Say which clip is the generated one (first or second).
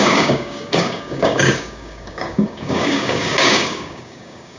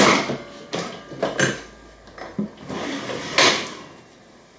first